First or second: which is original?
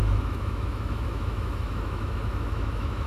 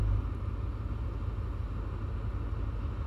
second